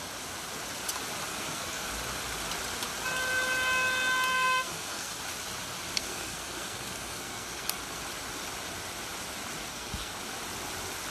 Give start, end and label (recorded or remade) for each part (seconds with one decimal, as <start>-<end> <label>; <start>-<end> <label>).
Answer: 0.0-1.3 recorded; 1.3-1.9 remade; 1.9-4.3 recorded; 4.3-5.2 remade; 5.2-6.0 recorded; 6.0-8.0 remade; 8.0-9.7 recorded; 9.7-10.2 remade; 10.2-11.1 recorded